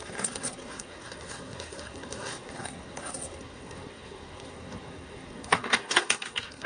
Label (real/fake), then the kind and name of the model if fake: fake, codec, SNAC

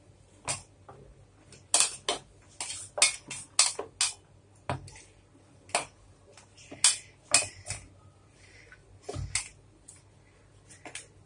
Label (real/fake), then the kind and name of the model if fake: real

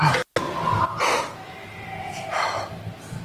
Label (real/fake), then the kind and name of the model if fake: real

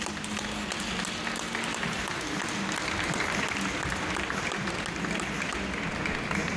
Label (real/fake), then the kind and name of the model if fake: real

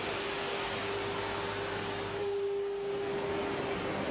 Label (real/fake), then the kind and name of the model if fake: real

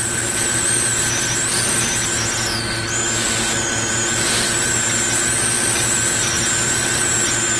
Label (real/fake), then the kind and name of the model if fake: real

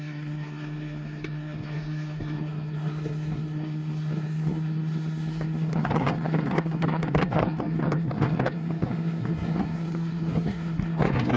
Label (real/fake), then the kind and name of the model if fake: fake, codec, SNAC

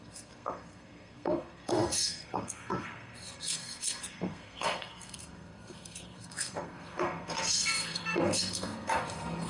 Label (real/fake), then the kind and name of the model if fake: fake, codec, SNAC